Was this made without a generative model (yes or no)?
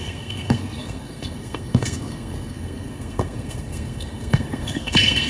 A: no